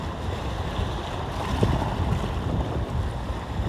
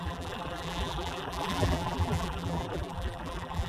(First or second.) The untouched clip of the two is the first